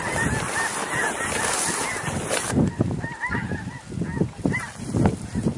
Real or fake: real